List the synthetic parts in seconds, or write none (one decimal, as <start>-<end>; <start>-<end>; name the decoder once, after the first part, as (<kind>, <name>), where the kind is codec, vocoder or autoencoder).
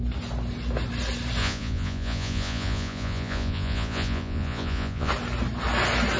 1.4-5.1 (vocoder, Vocos)